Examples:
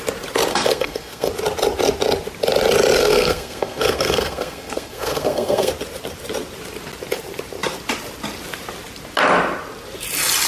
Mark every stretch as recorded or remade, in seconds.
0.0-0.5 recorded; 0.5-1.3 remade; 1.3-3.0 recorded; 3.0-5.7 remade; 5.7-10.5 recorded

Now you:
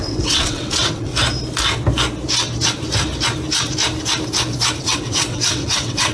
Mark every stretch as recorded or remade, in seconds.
0.0-1.1 remade; 1.1-4.8 recorded; 4.8-6.1 remade